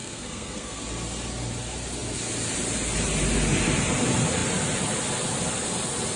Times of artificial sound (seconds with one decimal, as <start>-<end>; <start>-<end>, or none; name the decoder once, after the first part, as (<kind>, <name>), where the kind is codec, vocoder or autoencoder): 0.0-0.8 (codec, SNAC)